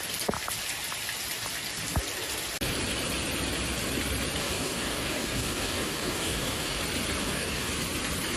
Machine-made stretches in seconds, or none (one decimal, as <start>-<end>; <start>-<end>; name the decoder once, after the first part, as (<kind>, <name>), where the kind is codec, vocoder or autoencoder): 4.4-6.8 (codec, DAC); 7.2-7.7